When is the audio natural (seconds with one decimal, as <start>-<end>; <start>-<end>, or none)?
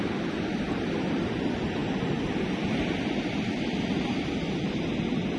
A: 0.0-5.4